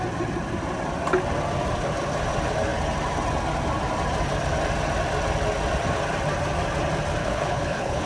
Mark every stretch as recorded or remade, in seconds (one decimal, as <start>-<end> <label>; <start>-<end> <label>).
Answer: 0.0-7.2 recorded; 7.2-8.1 remade